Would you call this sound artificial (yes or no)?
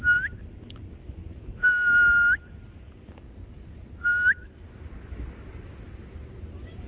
no